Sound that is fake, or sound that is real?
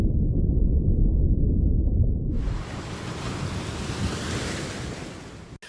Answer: real